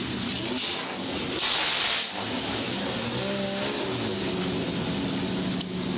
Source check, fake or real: real